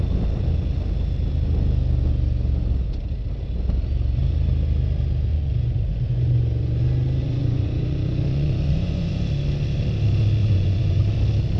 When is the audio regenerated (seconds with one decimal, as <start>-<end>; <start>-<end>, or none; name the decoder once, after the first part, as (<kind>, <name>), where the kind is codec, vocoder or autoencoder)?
5.3-6.8 (vocoder, Vocos); 7.2-9.1; 10.4-11.0